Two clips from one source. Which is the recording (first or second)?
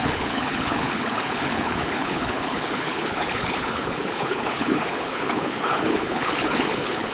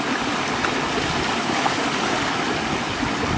second